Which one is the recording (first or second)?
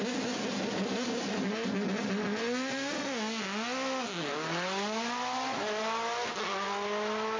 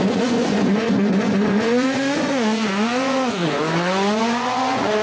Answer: first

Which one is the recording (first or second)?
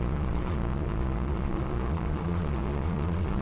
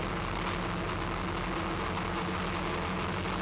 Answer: second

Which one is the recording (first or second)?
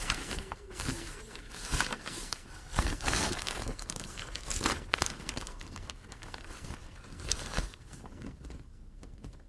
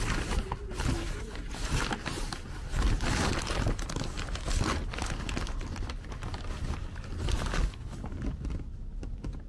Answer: second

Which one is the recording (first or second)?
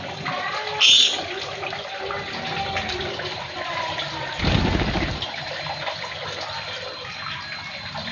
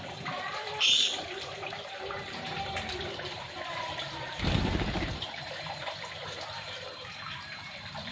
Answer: first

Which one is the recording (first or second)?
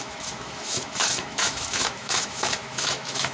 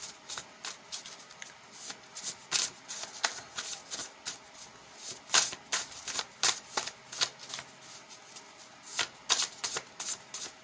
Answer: second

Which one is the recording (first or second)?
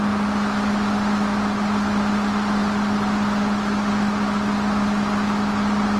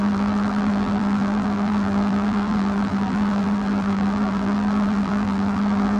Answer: first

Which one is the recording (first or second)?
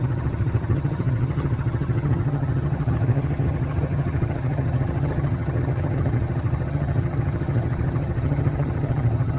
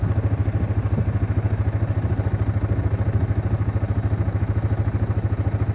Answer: second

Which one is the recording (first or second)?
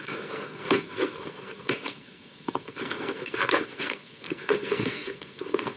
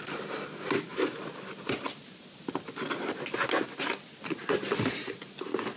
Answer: second